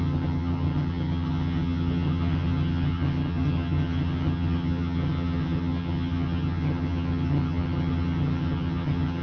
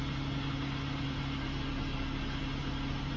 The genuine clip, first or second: second